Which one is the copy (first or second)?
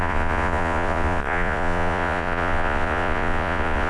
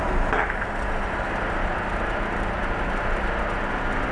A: first